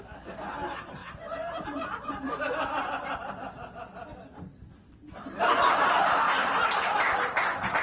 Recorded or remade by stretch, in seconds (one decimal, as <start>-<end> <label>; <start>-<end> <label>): 0.0-1.0 recorded; 1.0-3.3 remade; 3.3-3.9 recorded; 3.9-4.4 remade; 4.4-7.8 recorded

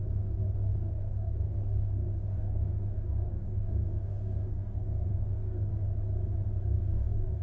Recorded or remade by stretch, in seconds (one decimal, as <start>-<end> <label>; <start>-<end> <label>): 0.0-5.7 remade; 5.7-6.6 recorded; 6.6-7.4 remade

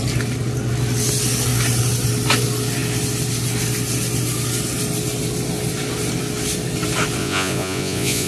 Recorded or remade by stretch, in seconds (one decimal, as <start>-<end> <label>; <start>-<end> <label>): 0.0-7.2 recorded; 7.2-8.3 remade

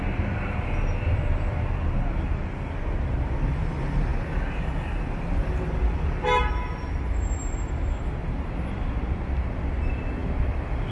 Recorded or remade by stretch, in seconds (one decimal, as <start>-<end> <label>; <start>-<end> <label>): 0.0-8.2 recorded; 8.2-9.7 remade; 9.7-10.2 recorded; 10.2-10.9 remade

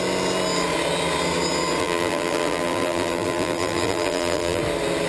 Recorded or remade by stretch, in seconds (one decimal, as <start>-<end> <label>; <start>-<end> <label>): 0.0-1.8 recorded; 1.8-4.6 remade; 4.6-5.1 recorded

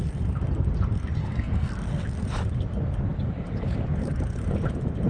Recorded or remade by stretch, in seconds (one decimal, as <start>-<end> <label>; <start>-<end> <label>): 0.0-1.2 recorded; 1.2-1.7 remade; 1.7-5.1 recorded